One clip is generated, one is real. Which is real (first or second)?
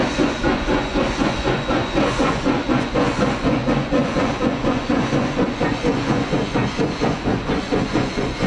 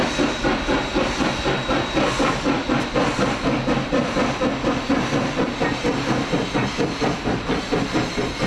second